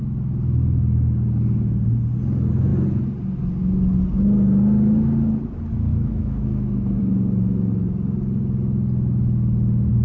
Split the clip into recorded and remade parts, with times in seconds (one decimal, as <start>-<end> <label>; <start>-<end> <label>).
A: 0.0-5.9 recorded; 5.9-7.0 remade; 7.0-10.0 recorded